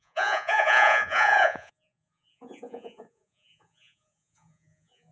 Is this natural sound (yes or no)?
no